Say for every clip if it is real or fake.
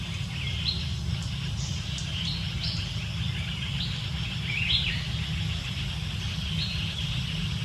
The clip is real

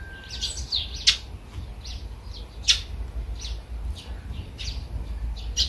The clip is real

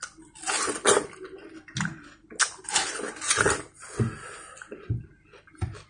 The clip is real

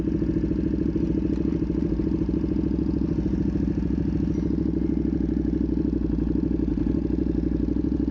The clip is real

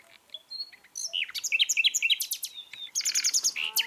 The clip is real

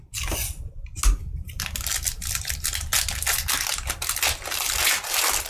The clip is real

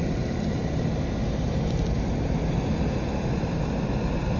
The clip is real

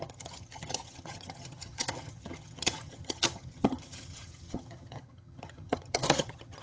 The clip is fake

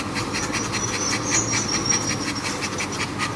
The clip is real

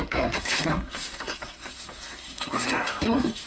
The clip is fake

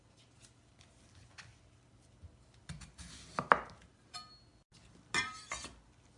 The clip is real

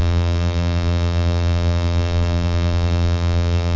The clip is fake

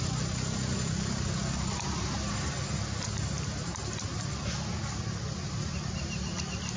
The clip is real